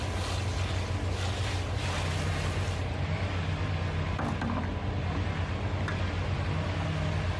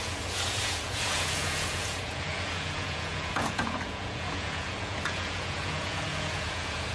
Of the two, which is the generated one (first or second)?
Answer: second